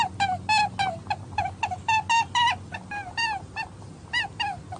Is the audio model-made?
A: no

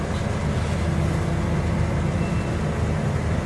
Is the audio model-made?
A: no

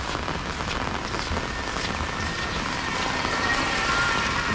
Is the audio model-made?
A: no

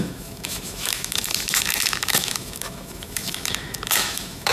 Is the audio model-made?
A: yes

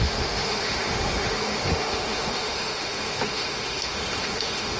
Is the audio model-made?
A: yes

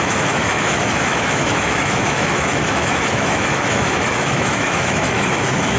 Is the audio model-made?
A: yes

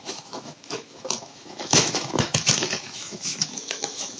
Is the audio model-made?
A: yes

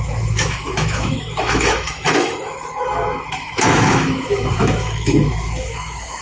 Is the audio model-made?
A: yes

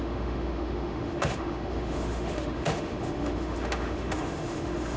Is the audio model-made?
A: yes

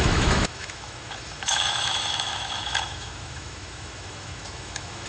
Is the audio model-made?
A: yes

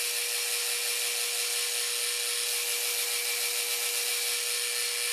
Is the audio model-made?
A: no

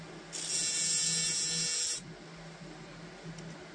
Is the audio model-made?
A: no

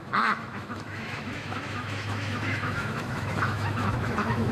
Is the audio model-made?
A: yes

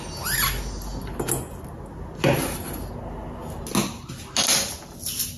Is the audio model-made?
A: no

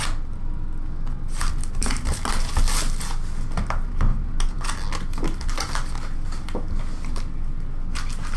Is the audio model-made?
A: no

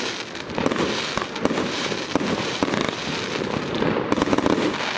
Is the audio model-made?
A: no